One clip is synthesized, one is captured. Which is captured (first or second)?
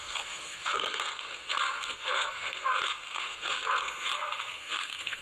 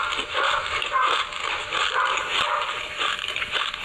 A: second